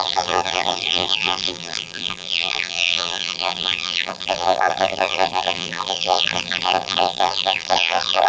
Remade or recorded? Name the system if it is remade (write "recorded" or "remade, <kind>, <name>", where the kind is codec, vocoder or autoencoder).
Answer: remade, vocoder, BigVGAN v2